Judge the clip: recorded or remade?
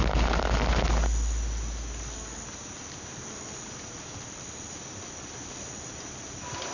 recorded